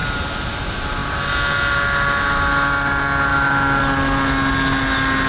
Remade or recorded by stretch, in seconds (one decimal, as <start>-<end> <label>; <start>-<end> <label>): 0.0-3.3 recorded; 3.3-3.8 remade; 3.8-5.3 recorded

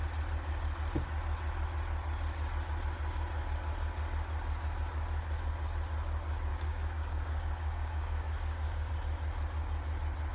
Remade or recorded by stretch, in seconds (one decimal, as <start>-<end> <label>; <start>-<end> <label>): 0.0-6.5 recorded; 6.5-8.9 remade; 8.9-10.3 recorded

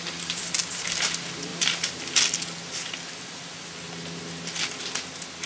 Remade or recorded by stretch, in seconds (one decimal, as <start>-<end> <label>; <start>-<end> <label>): 0.0-5.5 recorded